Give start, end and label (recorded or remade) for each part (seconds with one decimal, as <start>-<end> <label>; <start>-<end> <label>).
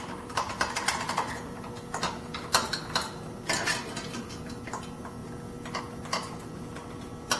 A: 0.0-7.4 recorded